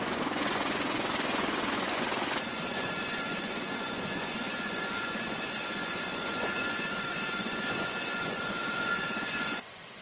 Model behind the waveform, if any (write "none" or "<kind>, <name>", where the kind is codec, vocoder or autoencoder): vocoder, Vocos